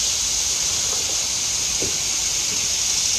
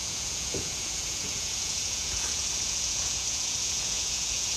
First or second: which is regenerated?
second